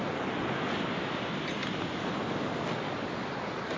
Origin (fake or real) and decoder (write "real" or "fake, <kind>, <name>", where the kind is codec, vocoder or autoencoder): real